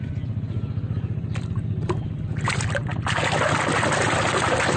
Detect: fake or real real